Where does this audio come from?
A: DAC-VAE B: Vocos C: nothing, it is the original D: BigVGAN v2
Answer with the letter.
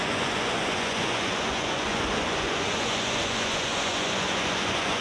B